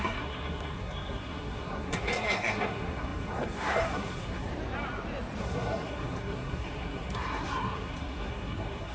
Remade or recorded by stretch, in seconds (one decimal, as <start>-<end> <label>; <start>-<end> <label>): 0.0-4.5 remade; 4.5-5.4 recorded; 5.4-8.9 remade